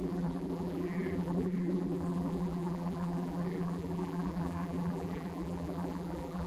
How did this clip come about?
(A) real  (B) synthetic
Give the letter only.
B